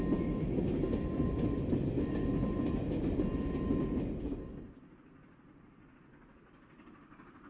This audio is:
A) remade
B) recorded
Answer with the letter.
B